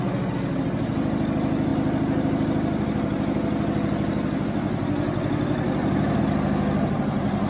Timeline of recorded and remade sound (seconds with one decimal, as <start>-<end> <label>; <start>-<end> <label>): 0.0-7.5 recorded